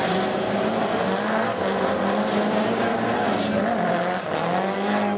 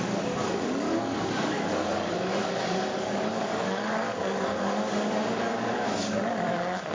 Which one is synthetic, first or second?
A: second